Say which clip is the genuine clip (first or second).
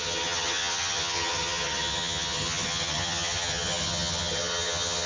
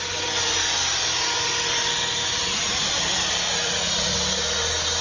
second